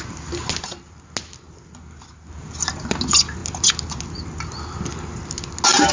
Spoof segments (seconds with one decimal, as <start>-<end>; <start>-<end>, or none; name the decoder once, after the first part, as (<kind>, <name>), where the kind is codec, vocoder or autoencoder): none